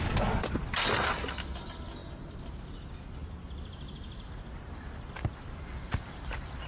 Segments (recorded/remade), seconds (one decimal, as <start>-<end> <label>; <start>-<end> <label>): 0.0-6.7 recorded